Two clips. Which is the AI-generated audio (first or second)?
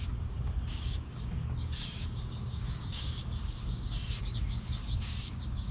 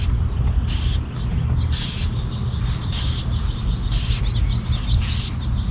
first